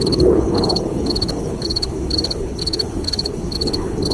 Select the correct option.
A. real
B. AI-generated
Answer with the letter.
B